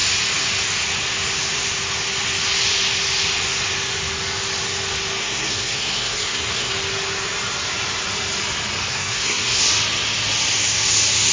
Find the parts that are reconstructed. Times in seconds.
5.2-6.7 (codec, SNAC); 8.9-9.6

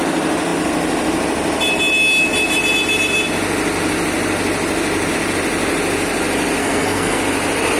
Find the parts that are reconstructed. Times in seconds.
6.6-7.2 (codec, SNAC)

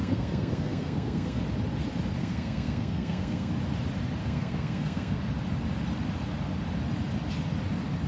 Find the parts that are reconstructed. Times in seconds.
0.0-1.4 (codec, SNAC); 2.2-3.5; 4.2-5.2

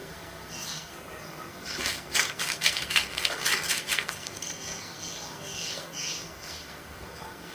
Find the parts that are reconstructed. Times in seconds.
0.0-7.5 (codec, SNAC)